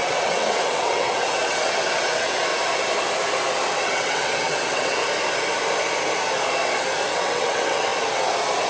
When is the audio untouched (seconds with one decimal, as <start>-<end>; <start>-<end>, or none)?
2.5-3.8; 5.0-7.1; 7.9-8.7